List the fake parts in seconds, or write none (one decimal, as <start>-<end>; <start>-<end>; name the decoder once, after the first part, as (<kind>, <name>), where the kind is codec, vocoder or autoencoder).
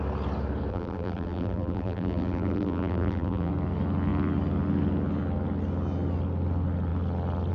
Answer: 0.7-3.5 (vocoder, BigVGAN v2)